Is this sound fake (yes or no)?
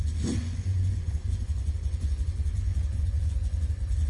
yes